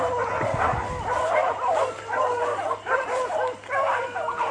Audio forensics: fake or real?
fake